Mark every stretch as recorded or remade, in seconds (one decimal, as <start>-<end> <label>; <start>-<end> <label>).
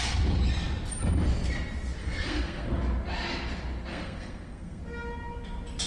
0.0-2.0 recorded; 2.0-2.8 remade; 2.8-3.9 recorded; 3.9-4.8 remade; 4.8-5.9 recorded